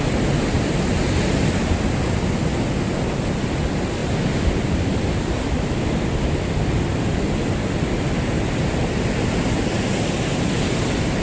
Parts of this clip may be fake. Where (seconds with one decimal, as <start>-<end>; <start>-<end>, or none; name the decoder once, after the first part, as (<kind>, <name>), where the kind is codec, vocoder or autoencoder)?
none